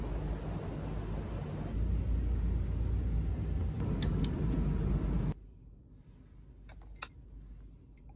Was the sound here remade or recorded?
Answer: recorded